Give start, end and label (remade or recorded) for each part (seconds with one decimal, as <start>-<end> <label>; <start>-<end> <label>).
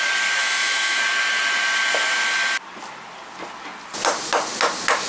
0.0-0.4 recorded; 0.4-1.0 remade; 1.0-5.1 recorded